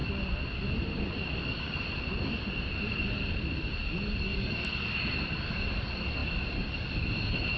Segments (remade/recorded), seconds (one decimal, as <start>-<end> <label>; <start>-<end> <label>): 0.0-7.6 recorded